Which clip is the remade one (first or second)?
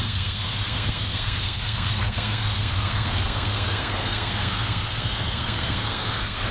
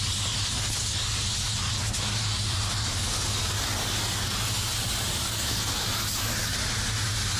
first